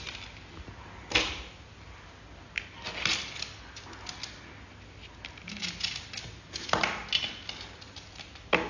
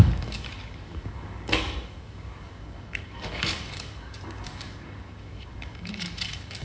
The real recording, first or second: first